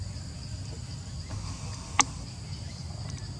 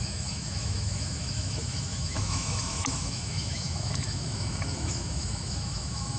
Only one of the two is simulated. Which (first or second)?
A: second